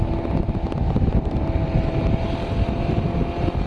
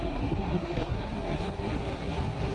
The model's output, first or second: second